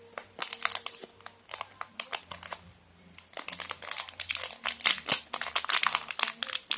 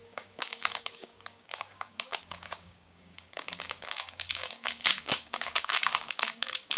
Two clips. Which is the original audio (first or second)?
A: first